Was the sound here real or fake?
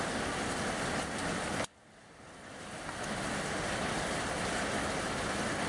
real